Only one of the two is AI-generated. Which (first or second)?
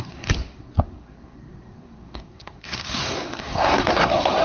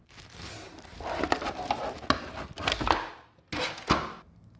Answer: first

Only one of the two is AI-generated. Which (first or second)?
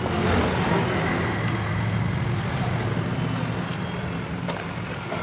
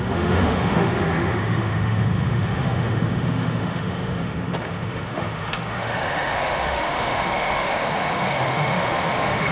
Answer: second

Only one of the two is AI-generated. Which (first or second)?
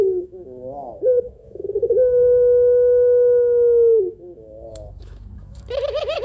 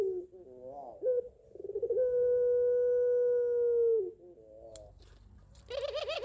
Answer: first